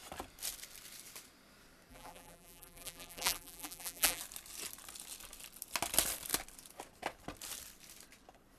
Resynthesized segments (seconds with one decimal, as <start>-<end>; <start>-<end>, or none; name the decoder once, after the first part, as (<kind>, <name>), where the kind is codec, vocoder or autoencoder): 1.9-4.2 (vocoder, BigVGAN v2)